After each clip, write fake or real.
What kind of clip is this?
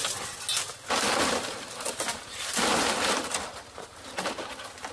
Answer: real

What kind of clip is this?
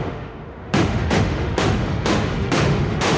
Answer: fake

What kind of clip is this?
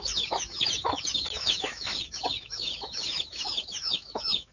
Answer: fake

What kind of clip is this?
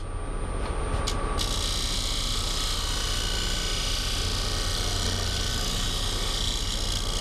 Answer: real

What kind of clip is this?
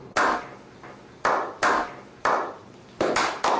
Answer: real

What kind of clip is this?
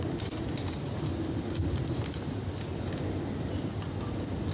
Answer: real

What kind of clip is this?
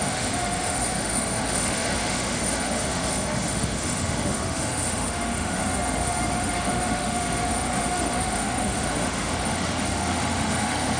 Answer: fake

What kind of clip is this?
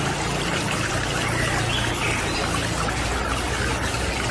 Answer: real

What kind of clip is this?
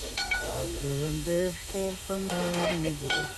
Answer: fake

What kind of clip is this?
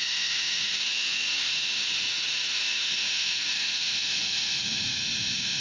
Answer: fake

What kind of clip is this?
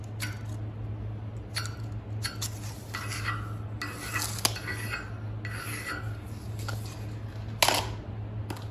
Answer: real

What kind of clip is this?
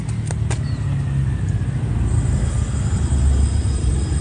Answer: real